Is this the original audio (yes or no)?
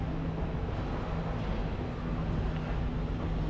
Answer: yes